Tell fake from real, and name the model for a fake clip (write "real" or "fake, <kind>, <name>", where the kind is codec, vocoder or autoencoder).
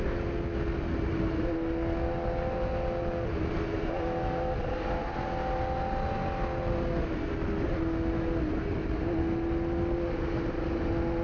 real